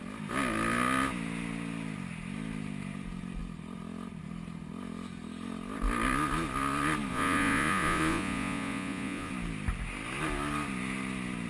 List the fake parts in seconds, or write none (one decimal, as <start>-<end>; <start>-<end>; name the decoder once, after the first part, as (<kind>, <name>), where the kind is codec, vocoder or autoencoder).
7.1-9.3 (vocoder, Vocos)